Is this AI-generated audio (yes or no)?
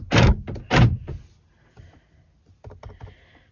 no